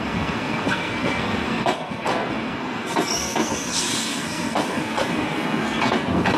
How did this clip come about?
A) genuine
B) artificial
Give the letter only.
B